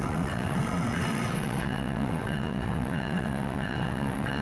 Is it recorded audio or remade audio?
remade